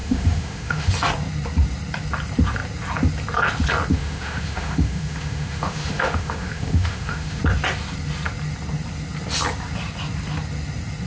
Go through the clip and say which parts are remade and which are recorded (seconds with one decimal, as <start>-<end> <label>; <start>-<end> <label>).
0.0-0.9 remade; 0.9-3.9 recorded; 3.9-7.4 remade; 7.4-11.1 recorded